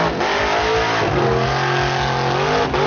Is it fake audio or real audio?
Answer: real